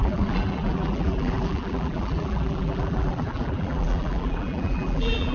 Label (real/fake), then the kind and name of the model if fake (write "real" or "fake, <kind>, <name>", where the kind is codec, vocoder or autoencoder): fake, vocoder, BigVGAN v2